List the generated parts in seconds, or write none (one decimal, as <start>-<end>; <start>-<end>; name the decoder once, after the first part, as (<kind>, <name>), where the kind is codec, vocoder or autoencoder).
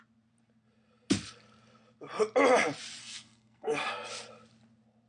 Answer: 3.0-4.1 (codec, SNAC)